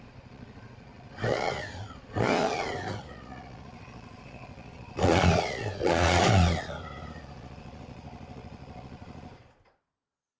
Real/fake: fake